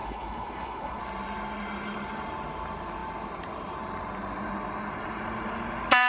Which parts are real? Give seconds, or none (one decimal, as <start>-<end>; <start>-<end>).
1.0-6.1